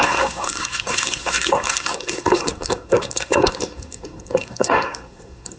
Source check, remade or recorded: remade